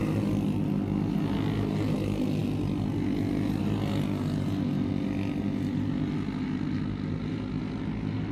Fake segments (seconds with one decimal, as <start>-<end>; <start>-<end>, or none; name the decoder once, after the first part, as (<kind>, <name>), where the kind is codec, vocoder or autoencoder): none